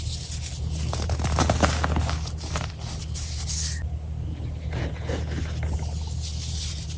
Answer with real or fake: real